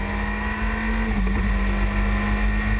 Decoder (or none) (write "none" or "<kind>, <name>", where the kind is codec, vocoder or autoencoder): none